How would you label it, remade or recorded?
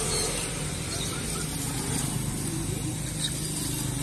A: recorded